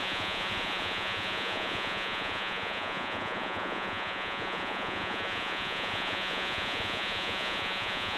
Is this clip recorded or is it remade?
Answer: remade